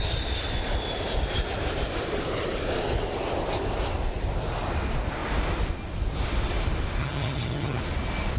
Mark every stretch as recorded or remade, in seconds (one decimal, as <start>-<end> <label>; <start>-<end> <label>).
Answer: 0.0-7.0 recorded; 7.0-7.8 remade; 7.8-8.4 recorded